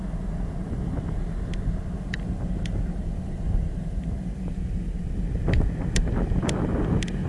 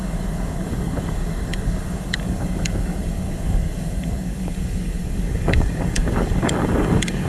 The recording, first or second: first